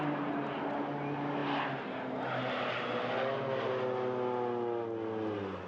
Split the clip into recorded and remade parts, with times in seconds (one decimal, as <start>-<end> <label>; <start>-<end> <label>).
0.0-5.7 recorded